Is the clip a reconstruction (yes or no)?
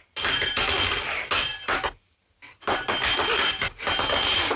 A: no